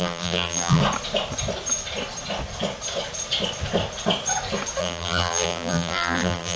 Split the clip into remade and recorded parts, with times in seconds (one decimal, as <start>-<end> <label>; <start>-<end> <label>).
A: 0.0-0.8 remade; 0.8-4.8 recorded; 4.8-6.6 remade